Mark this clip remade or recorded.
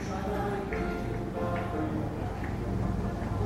recorded